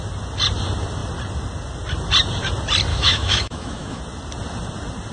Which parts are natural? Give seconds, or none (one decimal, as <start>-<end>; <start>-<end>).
0.0-2.9; 4.0-5.1